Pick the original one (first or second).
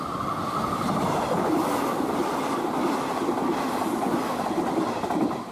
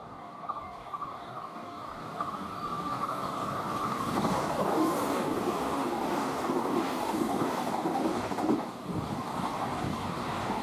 first